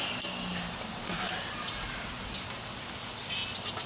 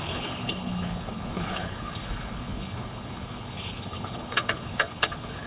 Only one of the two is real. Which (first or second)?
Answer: first